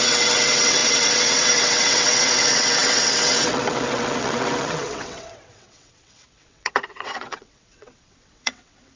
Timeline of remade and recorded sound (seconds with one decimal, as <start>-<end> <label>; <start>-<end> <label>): 0.0-9.0 remade